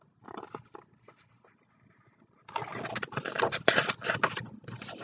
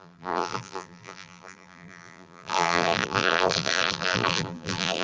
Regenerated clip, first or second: second